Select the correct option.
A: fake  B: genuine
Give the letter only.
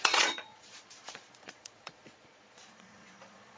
A